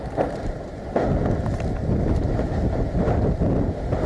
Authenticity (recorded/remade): recorded